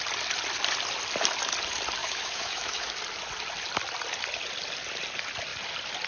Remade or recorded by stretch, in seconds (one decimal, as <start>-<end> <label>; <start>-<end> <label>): 0.0-2.0 recorded; 2.0-2.9 remade; 2.9-6.1 recorded